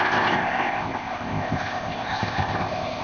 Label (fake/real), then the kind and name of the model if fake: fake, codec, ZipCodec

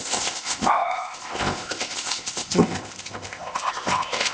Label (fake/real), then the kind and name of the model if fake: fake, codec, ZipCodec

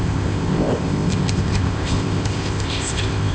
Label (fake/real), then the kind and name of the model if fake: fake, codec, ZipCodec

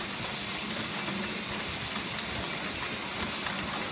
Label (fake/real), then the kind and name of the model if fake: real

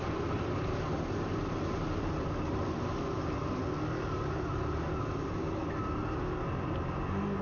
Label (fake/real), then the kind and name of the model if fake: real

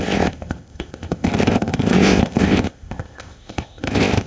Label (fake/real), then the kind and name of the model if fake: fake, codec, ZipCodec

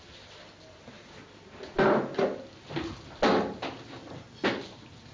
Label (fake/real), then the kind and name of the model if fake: real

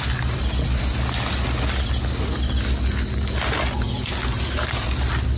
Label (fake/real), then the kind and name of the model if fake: real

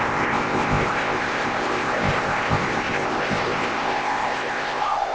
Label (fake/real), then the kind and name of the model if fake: fake, codec, ZipCodec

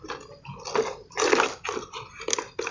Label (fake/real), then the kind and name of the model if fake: real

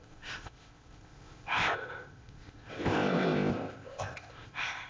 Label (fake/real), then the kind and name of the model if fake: fake, codec, ZipCodec